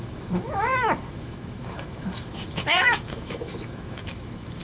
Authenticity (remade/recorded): remade